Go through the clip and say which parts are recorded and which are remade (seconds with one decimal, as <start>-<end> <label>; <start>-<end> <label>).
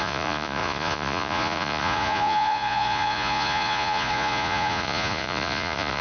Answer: 0.0-6.0 remade